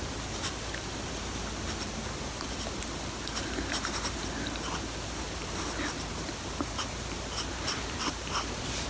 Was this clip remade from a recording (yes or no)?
no